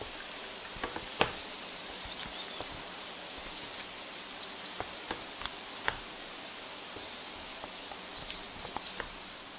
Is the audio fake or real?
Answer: real